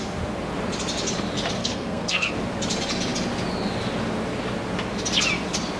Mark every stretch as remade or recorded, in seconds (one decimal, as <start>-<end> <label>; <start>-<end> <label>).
0.0-1.6 recorded; 1.6-2.3 remade; 2.3-5.8 recorded